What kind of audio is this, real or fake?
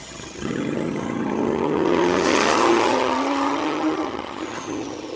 fake